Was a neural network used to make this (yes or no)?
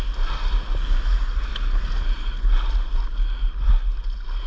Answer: no